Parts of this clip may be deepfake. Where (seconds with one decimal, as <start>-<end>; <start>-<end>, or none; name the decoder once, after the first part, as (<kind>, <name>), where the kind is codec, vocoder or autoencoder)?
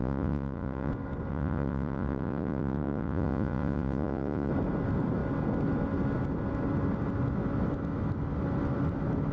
0.0-0.9 (vocoder, Vocos); 1.3-4.5